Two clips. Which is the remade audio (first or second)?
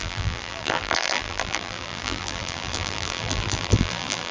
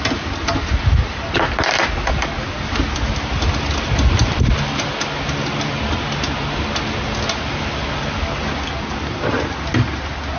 first